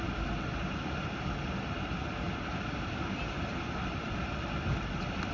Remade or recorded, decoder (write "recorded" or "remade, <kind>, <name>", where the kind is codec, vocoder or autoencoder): recorded